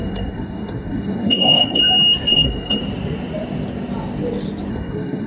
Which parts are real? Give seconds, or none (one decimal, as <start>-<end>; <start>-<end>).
1.8-2.3; 2.8-4.7